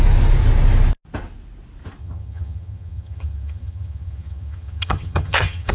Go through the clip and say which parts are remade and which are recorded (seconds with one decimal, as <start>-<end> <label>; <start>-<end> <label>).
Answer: 0.0-2.0 recorded; 2.0-5.7 remade